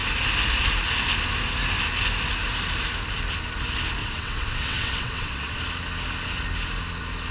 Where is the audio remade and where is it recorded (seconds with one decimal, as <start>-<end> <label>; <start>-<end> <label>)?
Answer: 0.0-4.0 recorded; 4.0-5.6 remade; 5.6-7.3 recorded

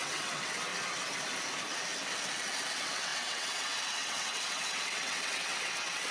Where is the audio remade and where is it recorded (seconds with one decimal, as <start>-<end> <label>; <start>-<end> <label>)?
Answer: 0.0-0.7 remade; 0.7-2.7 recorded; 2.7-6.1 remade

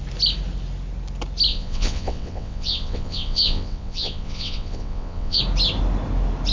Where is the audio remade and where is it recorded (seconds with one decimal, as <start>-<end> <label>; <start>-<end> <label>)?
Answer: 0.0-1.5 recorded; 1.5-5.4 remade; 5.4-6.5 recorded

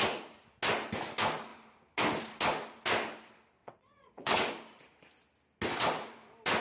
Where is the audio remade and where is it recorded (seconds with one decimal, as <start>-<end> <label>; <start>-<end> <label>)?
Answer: 0.0-3.6 recorded; 3.6-4.4 remade; 4.4-6.6 recorded

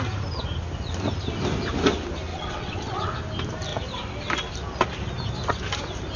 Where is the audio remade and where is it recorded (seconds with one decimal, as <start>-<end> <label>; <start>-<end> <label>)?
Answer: 0.0-2.3 recorded; 2.3-3.1 remade; 3.1-6.2 recorded

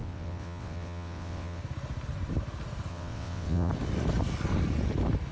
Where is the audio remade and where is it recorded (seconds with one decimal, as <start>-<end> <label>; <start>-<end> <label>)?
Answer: 0.0-1.6 remade; 1.6-2.9 recorded; 2.9-3.7 remade; 3.7-5.3 recorded

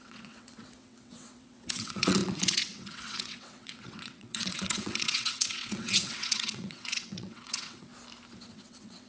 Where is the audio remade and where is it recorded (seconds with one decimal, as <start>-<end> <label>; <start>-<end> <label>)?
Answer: 0.0-7.9 remade; 7.9-8.5 recorded; 8.5-9.1 remade

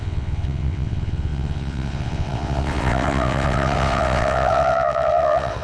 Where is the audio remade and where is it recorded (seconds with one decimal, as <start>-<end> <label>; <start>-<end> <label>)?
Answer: 0.0-5.6 remade